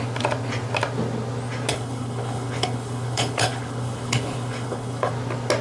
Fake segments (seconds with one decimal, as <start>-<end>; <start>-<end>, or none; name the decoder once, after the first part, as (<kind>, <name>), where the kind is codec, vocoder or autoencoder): 1.7-5.1 (codec, HILCodec)